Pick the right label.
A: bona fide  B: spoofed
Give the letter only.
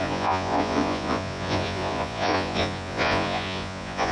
B